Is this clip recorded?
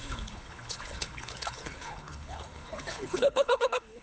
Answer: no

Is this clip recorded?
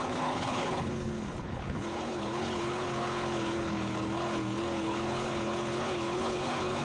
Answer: no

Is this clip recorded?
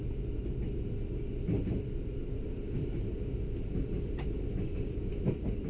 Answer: yes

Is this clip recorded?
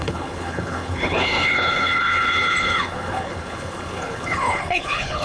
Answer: no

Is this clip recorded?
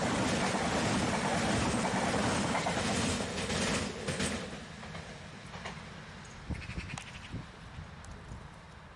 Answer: yes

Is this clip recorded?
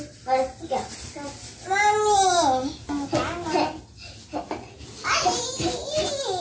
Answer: yes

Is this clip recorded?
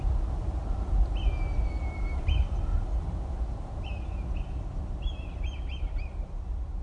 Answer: yes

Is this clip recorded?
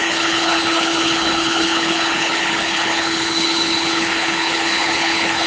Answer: no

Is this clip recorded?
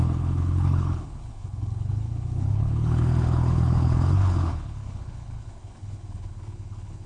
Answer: no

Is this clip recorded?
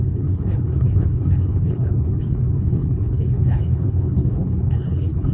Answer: no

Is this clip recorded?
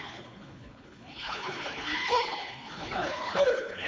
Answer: no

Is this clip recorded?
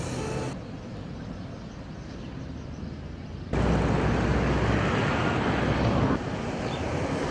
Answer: yes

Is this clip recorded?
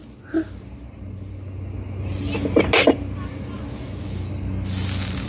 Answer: yes